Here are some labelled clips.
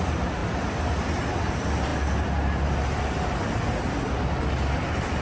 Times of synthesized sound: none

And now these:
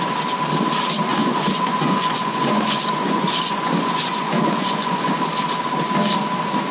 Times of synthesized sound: 1.1-5.1 (vocoder, Vocos)